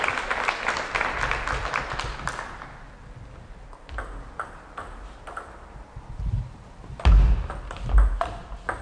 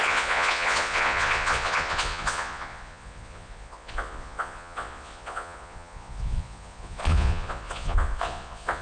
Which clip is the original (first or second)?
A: first